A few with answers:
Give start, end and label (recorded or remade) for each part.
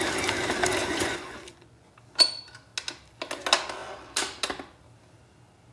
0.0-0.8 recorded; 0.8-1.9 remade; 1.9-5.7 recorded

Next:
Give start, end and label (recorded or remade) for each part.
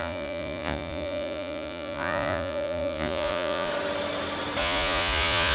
0.0-3.7 remade; 3.7-4.6 recorded; 4.6-5.5 remade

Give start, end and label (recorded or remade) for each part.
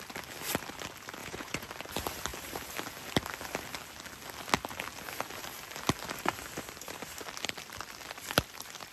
0.0-1.2 recorded; 1.2-1.7 remade; 1.7-8.9 recorded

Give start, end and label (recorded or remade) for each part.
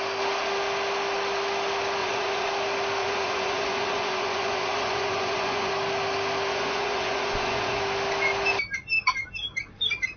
0.0-2.0 recorded; 2.0-2.5 remade; 2.5-3.0 recorded; 3.0-5.7 remade; 5.7-6.5 recorded; 6.5-7.8 remade; 7.8-10.2 recorded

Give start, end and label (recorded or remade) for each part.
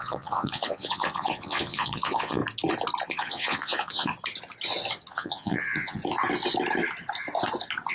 0.0-2.4 remade; 2.4-3.1 recorded; 3.1-4.1 remade; 4.1-5.1 recorded; 5.1-6.0 remade; 6.0-7.9 recorded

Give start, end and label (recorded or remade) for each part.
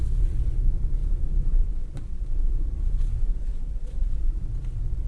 0.0-5.1 remade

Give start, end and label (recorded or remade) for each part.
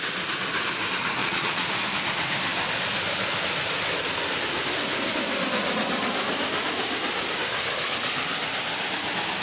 0.0-1.2 recorded; 1.2-1.7 remade; 1.7-9.4 recorded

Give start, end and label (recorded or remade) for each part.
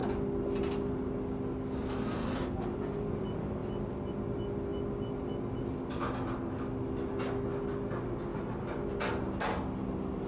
0.0-10.3 recorded